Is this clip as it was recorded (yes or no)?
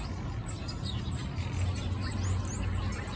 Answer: yes